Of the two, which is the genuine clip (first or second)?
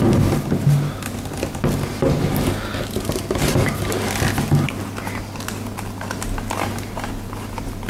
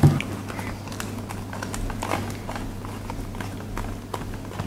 second